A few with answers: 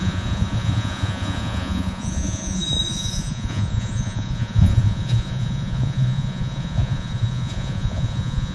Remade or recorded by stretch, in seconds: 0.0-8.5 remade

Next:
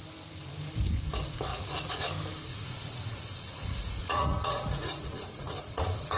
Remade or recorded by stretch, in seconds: 0.0-1.5 recorded; 1.5-2.0 remade; 2.0-2.5 recorded; 2.5-6.2 remade

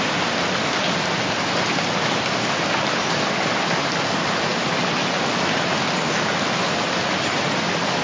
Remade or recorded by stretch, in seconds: 0.0-8.0 recorded

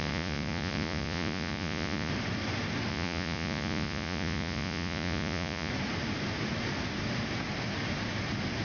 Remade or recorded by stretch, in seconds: 0.0-2.1 remade; 2.1-2.9 recorded; 2.9-5.7 remade; 5.7-8.6 recorded

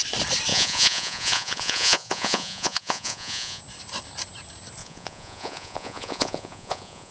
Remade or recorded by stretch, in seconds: 0.0-0.5 recorded; 0.5-3.6 remade; 3.6-4.8 recorded; 4.8-7.1 remade